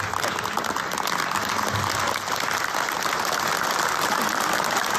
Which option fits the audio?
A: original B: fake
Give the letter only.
A